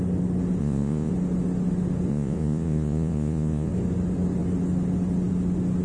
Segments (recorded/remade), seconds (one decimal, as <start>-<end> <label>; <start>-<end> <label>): 0.0-0.6 recorded; 0.6-1.1 remade; 1.1-2.1 recorded; 2.1-3.7 remade; 3.7-5.8 recorded